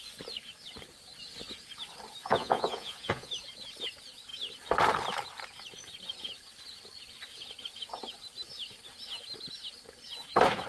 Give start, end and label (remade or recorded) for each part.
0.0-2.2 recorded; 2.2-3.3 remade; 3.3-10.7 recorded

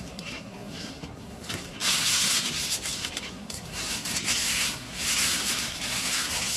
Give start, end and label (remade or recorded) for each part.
0.0-6.6 remade

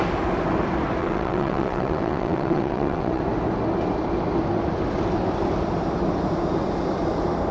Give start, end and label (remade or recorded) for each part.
0.0-1.0 recorded; 1.0-3.2 remade; 3.2-7.5 recorded

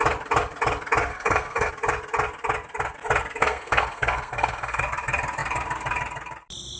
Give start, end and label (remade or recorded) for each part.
0.0-1.1 recorded; 1.1-1.7 remade; 1.7-3.4 recorded; 3.4-4.8 remade; 4.8-6.8 recorded

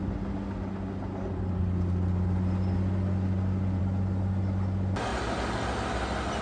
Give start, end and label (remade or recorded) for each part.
0.0-6.4 recorded

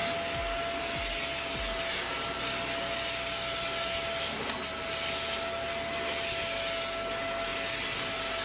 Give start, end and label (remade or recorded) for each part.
0.0-8.4 recorded